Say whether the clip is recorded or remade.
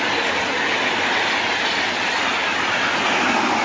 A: recorded